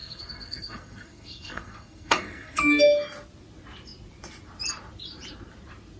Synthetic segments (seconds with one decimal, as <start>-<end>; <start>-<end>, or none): 0.0-2.8